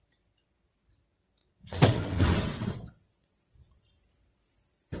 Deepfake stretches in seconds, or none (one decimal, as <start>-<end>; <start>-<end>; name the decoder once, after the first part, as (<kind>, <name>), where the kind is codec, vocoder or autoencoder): 1.4-3.9 (vocoder, WaveNeXt)